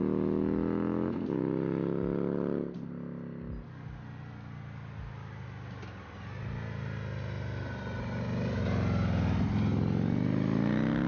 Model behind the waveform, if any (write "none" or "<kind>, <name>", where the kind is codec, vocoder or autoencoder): none